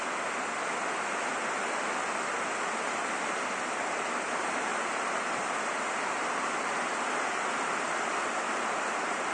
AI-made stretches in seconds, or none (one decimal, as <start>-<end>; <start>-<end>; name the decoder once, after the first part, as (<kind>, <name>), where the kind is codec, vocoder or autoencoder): none